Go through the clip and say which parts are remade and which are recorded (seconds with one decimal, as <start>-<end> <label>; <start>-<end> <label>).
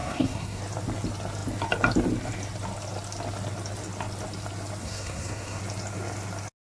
0.0-0.6 remade; 0.6-4.8 recorded; 4.8-5.6 remade; 5.6-6.6 recorded